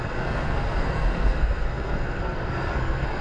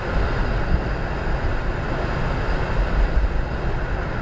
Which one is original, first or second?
second